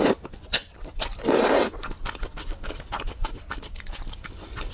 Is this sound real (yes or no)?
yes